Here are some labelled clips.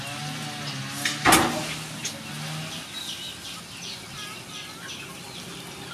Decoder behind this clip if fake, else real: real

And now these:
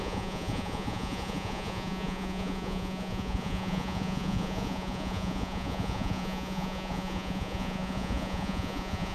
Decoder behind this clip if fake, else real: fake, vocoder, Vocos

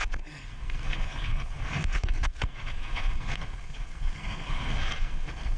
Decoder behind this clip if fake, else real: fake, codec, SNAC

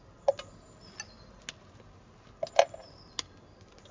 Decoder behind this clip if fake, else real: real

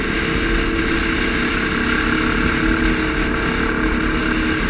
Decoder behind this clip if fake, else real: real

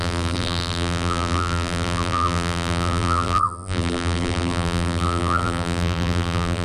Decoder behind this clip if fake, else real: fake, vocoder, BigVGAN v2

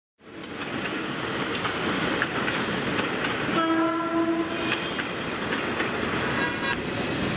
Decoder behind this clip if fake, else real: real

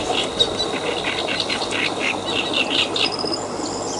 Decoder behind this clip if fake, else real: real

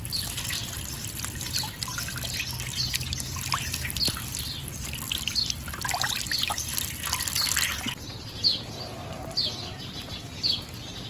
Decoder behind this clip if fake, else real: real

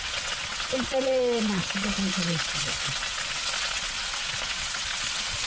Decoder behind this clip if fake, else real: fake, vocoder, WaveNeXt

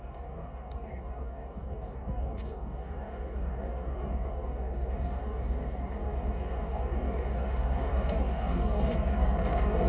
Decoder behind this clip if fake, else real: fake, codec, DAC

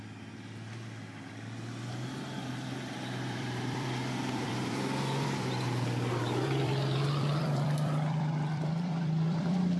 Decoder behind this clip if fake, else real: fake, vocoder, BigVGAN v2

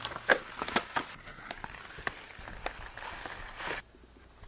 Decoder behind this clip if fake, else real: real